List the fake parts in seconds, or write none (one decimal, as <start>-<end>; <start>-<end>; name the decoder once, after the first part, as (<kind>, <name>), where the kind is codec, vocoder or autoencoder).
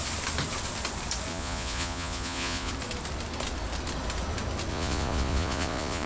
1.3-2.7 (vocoder, Vocos); 4.7-6.1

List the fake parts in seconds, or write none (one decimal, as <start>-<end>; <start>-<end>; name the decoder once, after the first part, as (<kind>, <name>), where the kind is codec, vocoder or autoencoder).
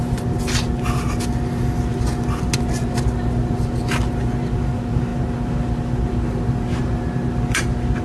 none